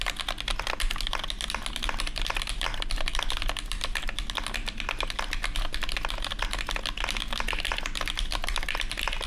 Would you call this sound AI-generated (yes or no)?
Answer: no